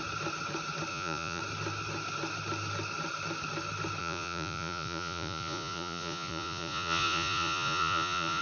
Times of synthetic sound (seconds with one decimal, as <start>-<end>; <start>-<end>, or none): 0.9-1.4; 4.0-8.4